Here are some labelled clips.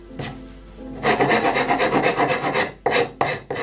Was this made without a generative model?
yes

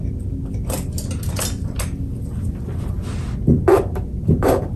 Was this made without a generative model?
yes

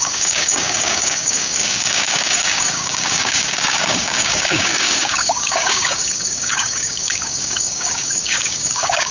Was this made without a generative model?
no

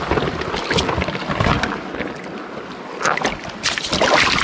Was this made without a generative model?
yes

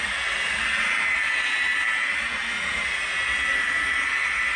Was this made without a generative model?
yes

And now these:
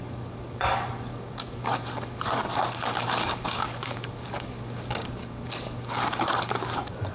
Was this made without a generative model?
no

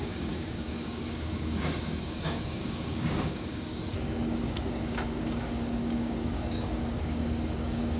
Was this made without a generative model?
no